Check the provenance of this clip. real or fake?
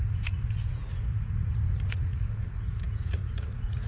fake